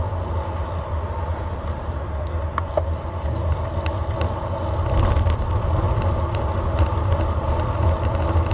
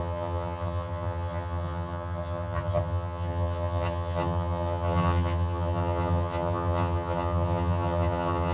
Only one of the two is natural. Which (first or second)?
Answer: first